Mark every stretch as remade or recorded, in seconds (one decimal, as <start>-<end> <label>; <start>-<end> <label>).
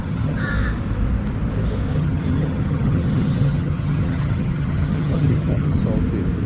0.0-0.5 remade; 0.5-1.9 recorded; 1.9-5.8 remade; 5.8-6.5 recorded